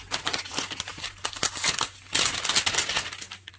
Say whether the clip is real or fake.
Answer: real